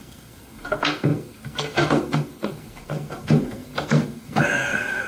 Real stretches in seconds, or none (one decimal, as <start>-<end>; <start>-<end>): none